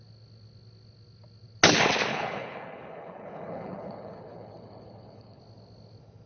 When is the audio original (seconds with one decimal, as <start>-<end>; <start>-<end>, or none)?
0.0-2.1; 5.4-6.3